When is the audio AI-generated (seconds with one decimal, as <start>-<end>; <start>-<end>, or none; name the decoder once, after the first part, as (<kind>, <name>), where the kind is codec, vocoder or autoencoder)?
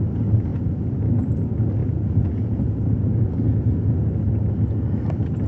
0.5-1.0 (vocoder, Vocos); 1.8-3.3